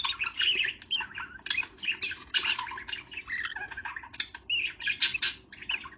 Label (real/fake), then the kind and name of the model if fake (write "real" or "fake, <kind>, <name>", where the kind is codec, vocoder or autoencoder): real